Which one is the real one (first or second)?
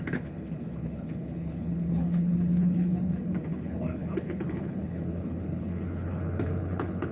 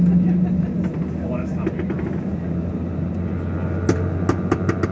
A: second